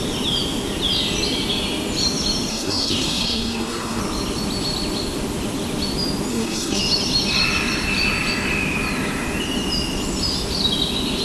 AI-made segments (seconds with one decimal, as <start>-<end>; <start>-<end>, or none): 2.5-4.0; 6.3-6.8